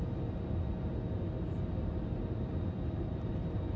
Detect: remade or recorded recorded